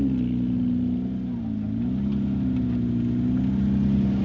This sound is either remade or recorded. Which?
recorded